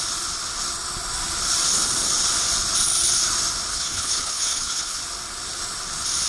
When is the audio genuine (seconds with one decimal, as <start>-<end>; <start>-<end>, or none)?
0.0-3.7; 5.0-6.3